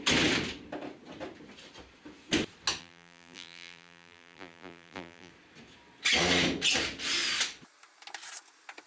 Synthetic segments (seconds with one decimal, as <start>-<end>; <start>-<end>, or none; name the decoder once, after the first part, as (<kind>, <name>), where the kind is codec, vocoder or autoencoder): 2.8-5.3 (vocoder, BigVGAN v2)